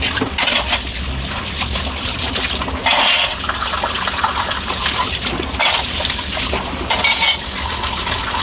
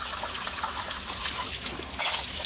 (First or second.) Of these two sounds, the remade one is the second